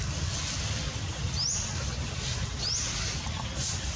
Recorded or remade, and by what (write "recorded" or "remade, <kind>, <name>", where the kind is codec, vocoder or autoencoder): recorded